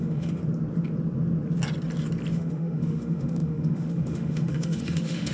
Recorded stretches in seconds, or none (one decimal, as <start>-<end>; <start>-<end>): 0.4-2.3

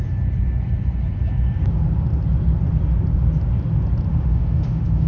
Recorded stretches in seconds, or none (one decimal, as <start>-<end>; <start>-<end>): 0.0-4.1